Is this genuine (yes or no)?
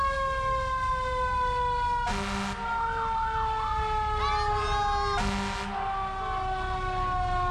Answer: yes